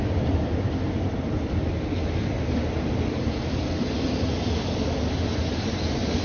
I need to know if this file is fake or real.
real